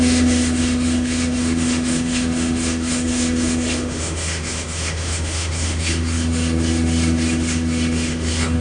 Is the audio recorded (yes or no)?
no